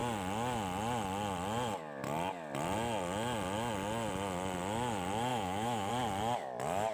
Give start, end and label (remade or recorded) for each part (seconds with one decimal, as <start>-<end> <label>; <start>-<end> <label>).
0.0-5.3 recorded; 5.3-5.9 remade; 5.9-6.9 recorded